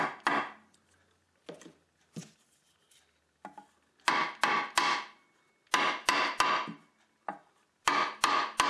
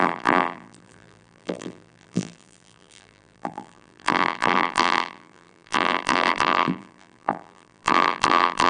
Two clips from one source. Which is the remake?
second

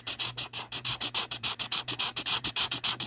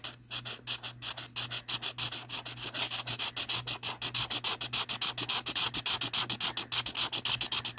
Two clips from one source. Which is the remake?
first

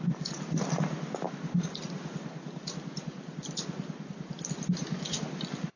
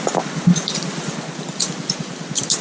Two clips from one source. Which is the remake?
second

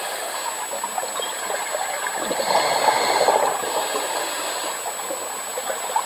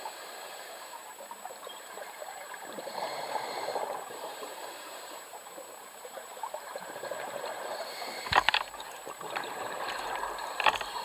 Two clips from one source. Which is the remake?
second